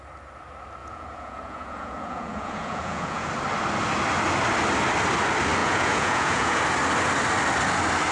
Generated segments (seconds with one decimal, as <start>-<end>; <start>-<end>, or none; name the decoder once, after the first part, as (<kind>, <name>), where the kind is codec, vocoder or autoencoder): 0.8-3.3 (vocoder, Vocos); 5.6-6.6

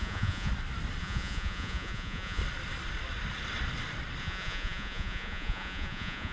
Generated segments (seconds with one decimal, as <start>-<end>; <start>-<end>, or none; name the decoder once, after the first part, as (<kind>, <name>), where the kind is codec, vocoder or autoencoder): 0.0-0.5 (vocoder, Vocos); 1.0-2.4; 4.2-6.3

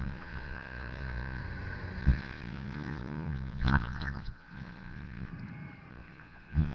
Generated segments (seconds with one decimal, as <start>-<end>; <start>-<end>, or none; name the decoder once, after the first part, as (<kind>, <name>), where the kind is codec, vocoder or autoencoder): 0.0-1.4 (vocoder, Vocos); 2.0-5.3; 5.9-6.7

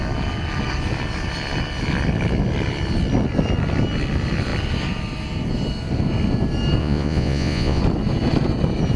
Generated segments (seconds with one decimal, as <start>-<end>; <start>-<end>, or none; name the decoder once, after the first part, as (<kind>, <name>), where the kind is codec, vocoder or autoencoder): 6.8-7.8 (vocoder, Vocos)

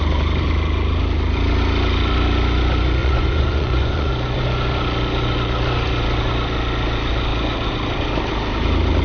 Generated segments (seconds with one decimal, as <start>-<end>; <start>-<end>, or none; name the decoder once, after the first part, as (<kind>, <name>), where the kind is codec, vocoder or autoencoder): 3.0-4.1 (vocoder, Vocos)